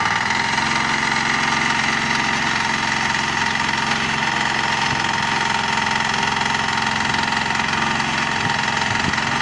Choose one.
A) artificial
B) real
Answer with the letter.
B